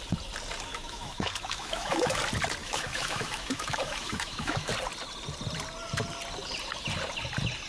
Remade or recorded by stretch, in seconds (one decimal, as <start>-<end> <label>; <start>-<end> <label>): 0.0-0.7 recorded; 0.7-2.2 remade; 2.2-2.6 recorded; 2.6-4.7 remade; 4.7-7.7 recorded